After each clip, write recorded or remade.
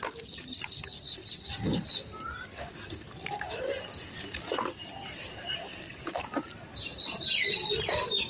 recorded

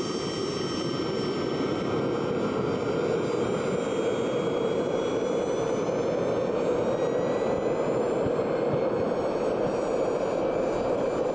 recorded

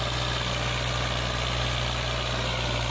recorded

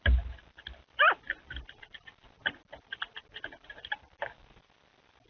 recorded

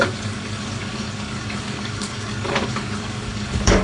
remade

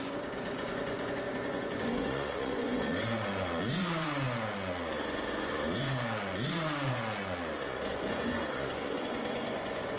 remade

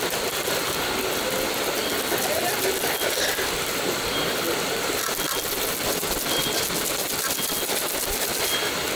recorded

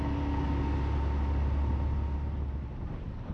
recorded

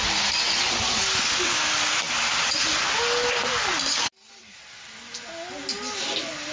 recorded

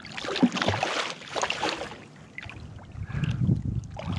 recorded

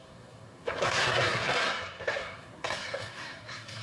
remade